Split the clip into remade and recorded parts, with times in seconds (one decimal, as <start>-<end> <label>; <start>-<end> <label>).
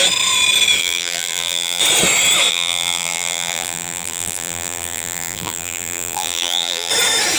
0.0-0.8 recorded; 0.8-1.8 remade; 1.8-2.5 recorded; 2.5-6.9 remade; 6.9-7.4 recorded